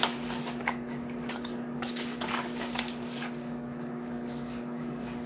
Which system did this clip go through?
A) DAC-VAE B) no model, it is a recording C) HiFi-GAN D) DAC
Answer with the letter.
D